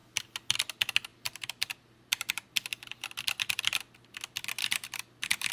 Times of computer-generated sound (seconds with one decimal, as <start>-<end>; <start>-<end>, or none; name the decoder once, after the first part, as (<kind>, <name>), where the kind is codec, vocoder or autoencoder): 1.1-2.5 (vocoder, BigVGAN v2); 4.6-5.5